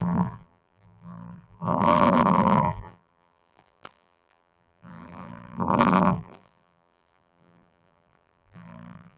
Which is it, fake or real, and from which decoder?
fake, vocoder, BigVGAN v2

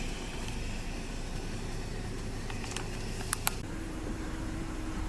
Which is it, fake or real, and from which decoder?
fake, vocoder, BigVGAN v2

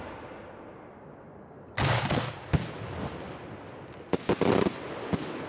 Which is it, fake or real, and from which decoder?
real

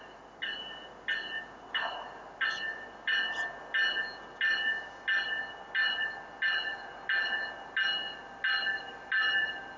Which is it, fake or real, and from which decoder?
real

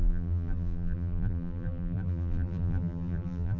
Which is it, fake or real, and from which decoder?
fake, vocoder, BigVGAN v2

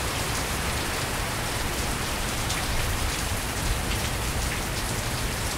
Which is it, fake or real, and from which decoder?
fake, vocoder, BigVGAN v2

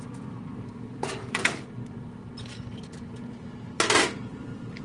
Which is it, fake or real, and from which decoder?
fake, vocoder, BigVGAN v2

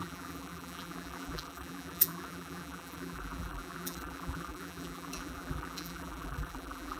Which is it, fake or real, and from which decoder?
fake, vocoder, BigVGAN v2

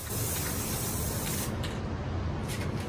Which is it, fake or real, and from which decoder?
real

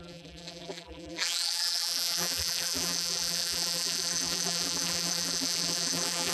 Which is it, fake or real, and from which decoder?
fake, vocoder, BigVGAN v2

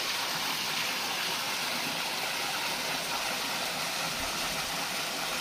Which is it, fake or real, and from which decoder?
real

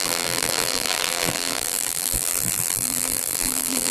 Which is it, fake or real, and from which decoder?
fake, vocoder, BigVGAN v2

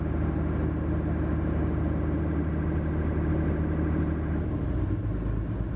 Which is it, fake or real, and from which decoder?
real